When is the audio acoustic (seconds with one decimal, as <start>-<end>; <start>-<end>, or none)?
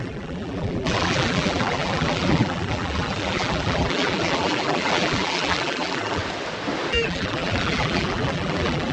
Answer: 6.2-6.9